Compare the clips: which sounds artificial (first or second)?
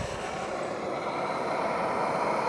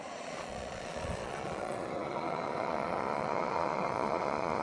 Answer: second